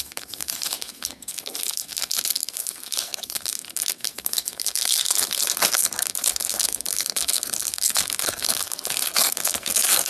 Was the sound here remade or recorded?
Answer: remade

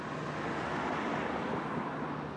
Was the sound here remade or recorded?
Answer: recorded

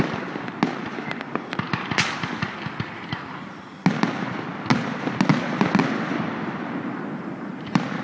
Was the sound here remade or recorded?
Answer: recorded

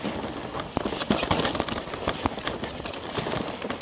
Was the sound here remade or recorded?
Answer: recorded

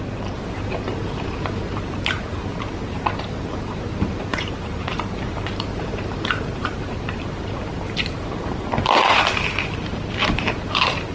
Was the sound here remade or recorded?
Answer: remade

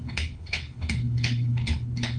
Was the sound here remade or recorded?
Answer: remade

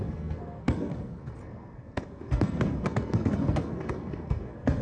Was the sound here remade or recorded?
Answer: remade